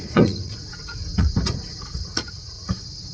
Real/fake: fake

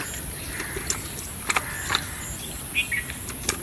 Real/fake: real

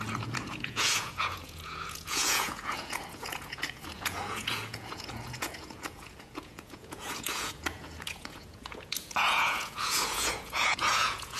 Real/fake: fake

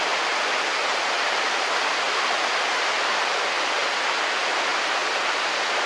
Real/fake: real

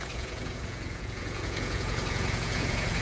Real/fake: fake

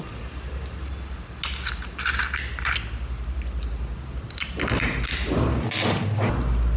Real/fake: real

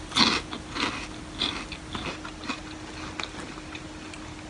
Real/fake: real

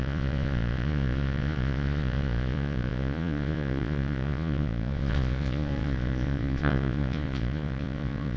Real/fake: fake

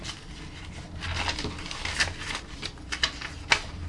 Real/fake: real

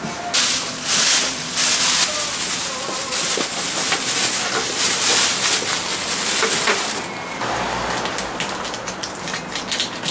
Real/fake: real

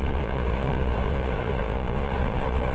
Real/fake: fake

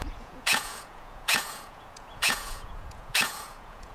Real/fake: fake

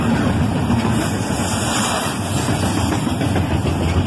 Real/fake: real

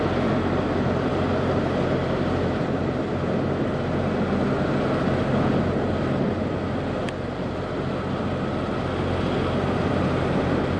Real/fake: real